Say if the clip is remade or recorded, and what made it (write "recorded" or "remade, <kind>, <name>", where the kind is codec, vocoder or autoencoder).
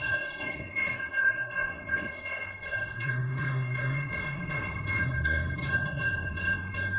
remade, codec, SNAC